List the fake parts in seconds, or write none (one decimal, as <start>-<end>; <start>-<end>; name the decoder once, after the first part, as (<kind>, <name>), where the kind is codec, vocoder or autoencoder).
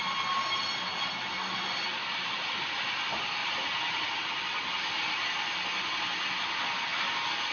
1.9-2.8 (vocoder, BigVGAN v2); 3.4-4.2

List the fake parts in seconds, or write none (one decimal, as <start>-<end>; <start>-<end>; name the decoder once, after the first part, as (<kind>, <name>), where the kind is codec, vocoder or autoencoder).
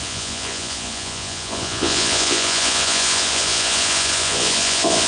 0.0-5.1 (vocoder, Vocos)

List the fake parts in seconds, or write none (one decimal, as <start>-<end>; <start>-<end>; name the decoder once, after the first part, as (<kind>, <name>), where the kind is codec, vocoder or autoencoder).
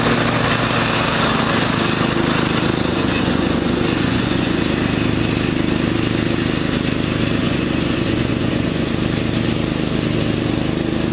2.9-4.6 (vocoder, Vocos); 7.4-8.9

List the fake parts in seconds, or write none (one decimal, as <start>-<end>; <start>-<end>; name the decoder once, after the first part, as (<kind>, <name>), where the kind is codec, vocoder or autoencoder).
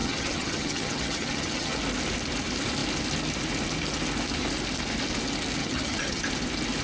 0.0-1.8 (vocoder, HiFi-GAN); 5.6-6.2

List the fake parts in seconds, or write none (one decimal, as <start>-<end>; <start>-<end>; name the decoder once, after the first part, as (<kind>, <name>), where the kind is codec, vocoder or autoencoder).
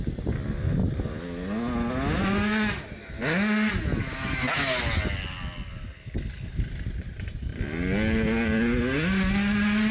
4.0-4.8 (autoencoder, DAC-VAE)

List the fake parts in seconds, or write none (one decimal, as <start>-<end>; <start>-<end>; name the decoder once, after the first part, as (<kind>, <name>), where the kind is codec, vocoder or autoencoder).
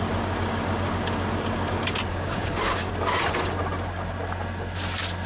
2.1-2.9 (codec, DAC)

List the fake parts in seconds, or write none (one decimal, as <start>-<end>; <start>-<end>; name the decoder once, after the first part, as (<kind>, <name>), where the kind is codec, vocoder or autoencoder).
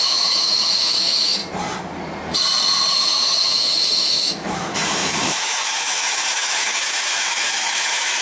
0.0-1.4 (autoencoder, DAC-VAE); 2.9-8.2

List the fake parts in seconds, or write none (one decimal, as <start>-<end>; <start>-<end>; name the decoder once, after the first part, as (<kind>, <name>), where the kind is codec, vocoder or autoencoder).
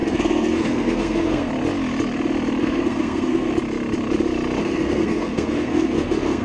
0.0-1.5 (codec, SNAC); 2.6-3.5; 4.6-6.4